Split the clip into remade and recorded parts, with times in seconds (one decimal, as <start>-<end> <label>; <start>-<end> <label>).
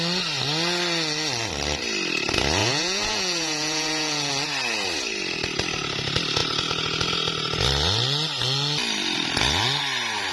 0.0-2.6 recorded; 2.6-4.3 remade; 4.3-10.3 recorded